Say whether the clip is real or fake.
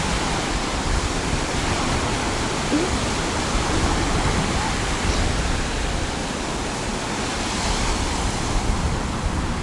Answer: fake